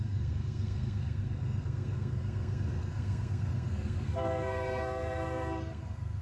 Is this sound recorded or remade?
remade